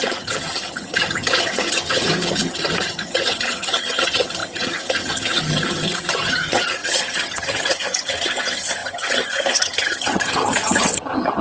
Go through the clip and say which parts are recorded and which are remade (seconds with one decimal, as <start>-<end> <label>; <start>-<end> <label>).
0.0-11.4 remade